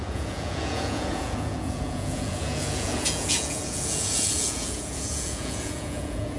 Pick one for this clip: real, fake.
fake